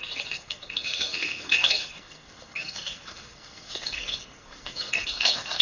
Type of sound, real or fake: fake